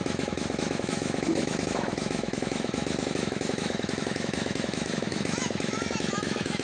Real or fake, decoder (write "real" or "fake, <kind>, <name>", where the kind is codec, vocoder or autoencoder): fake, autoencoder, DAC-VAE